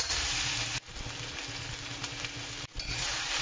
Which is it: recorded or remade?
recorded